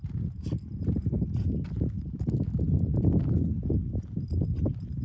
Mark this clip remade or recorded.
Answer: recorded